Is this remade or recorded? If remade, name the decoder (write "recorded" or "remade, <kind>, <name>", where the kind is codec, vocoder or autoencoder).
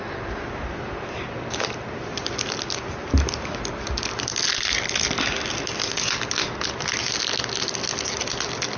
recorded